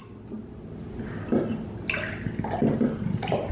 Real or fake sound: real